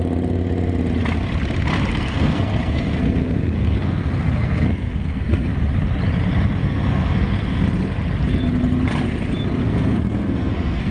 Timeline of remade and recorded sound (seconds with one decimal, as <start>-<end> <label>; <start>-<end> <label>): 0.0-1.9 recorded; 1.9-5.6 remade; 5.6-6.6 recorded; 6.6-7.6 remade; 7.6-9.6 recorded; 9.6-10.9 remade